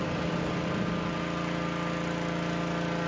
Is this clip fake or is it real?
real